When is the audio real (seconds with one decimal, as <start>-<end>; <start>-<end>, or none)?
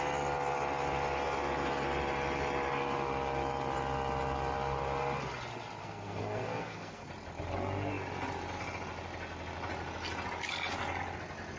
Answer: 0.0-5.8; 7.1-11.6